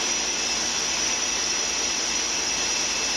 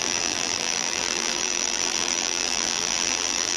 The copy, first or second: second